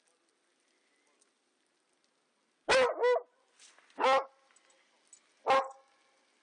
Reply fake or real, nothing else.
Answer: real